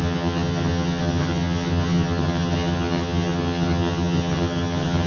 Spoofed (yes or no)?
yes